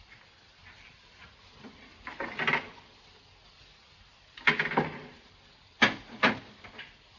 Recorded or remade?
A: recorded